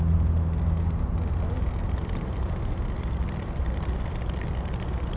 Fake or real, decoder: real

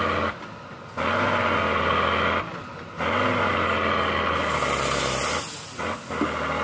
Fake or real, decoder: real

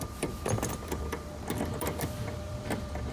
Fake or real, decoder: fake, vocoder, BigVGAN v2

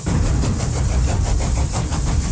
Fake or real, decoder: fake, vocoder, BigVGAN v2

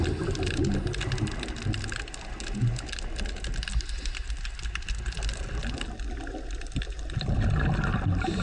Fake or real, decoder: real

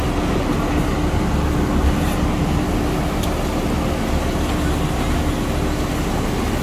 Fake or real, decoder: real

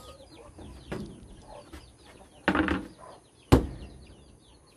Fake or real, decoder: real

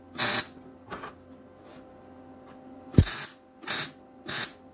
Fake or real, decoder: real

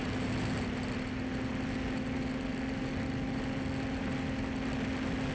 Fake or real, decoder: real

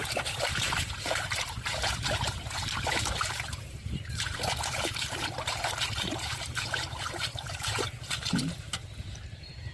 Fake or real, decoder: fake, vocoder, BigVGAN v2